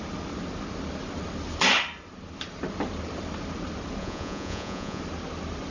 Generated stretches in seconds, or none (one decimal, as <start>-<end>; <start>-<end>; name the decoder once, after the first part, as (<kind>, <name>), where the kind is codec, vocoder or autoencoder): 4.0-5.0 (vocoder, Vocos)